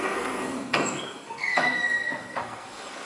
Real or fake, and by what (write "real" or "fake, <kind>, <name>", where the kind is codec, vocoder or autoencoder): fake, codec, SNAC